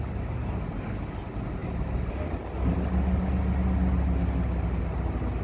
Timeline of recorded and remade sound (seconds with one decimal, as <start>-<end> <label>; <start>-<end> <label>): 0.0-5.4 recorded